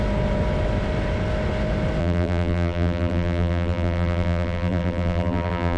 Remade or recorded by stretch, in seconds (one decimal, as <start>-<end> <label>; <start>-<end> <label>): 0.0-2.0 recorded; 2.0-5.8 remade